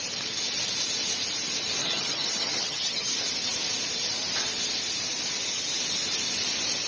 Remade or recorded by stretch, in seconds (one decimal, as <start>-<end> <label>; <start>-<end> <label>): 0.0-1.8 recorded; 1.8-3.1 remade; 3.1-6.9 recorded